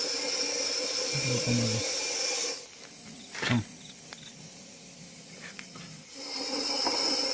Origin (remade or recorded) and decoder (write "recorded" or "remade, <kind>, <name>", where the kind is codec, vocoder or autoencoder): recorded